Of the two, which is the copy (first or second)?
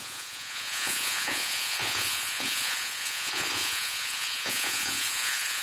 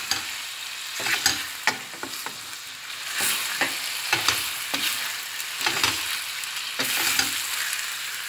first